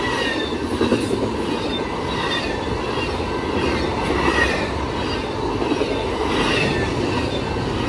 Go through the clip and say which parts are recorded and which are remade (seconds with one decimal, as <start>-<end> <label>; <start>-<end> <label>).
0.0-7.9 recorded